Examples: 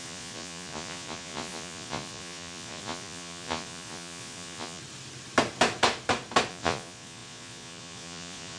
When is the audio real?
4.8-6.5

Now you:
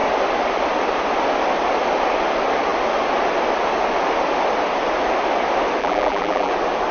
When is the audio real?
0.0-5.8; 6.5-6.9

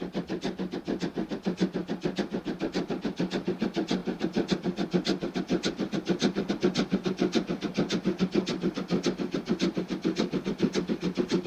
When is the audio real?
0.0-11.5

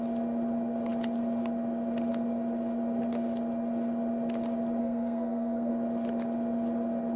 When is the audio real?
0.0-4.8; 5.7-7.2